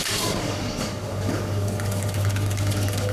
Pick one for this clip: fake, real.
fake